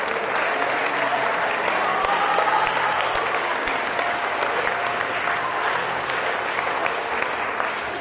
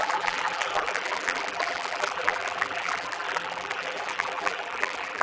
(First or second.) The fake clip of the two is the second